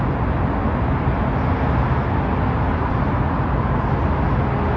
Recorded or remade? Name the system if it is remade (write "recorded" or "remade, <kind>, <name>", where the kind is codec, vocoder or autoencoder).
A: recorded